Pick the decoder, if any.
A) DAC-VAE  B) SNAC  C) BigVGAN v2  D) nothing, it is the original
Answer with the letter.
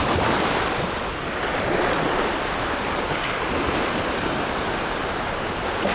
C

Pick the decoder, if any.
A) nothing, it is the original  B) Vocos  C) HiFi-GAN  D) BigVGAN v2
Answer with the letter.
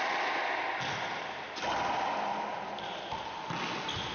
A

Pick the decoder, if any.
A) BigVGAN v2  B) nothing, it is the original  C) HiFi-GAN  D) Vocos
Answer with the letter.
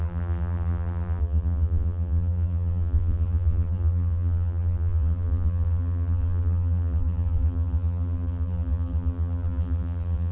A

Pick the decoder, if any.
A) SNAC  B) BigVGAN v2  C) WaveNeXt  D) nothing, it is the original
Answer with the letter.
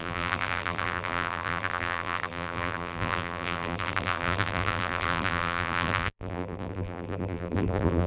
B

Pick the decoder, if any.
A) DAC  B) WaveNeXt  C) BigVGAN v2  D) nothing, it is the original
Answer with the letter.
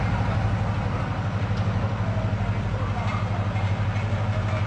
D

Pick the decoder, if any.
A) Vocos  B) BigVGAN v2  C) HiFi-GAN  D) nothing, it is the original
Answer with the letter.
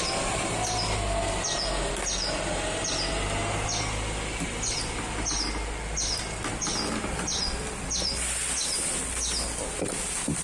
D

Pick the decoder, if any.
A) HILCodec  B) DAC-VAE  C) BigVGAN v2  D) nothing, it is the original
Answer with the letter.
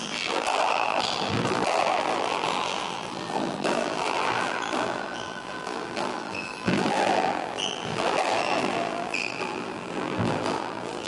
C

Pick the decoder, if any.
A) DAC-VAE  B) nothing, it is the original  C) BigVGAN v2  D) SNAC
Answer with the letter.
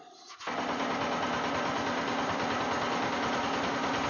B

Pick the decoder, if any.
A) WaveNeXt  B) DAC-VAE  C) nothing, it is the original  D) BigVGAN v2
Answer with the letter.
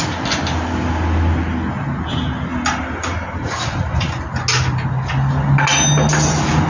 C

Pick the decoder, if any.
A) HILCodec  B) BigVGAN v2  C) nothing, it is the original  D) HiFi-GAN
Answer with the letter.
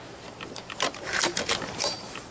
C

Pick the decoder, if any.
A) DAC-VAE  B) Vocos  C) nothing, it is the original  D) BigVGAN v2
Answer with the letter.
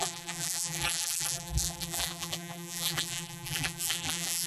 D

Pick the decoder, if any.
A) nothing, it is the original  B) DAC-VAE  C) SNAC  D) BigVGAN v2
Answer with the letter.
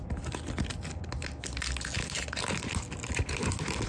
A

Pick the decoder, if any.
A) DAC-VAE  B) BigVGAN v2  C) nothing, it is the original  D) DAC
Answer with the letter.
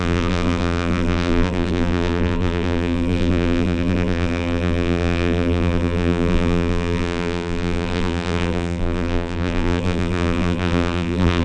B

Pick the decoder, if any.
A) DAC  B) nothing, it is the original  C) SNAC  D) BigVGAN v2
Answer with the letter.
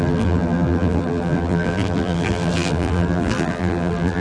D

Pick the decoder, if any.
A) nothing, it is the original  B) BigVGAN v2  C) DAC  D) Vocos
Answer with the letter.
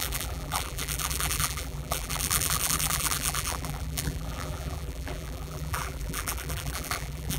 B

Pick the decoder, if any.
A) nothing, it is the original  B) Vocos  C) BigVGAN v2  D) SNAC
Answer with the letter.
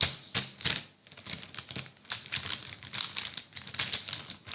A